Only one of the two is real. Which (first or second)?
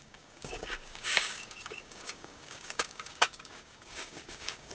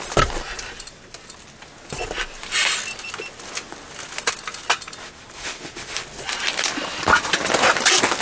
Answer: second